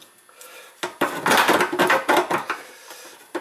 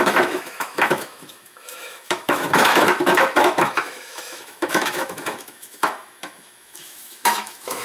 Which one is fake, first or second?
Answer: second